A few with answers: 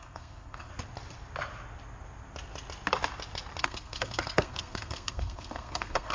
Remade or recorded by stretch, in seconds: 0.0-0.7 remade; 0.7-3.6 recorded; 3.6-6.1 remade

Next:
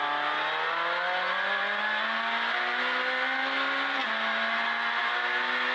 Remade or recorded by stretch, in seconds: 0.0-5.7 recorded